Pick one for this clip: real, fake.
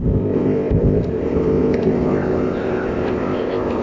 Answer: fake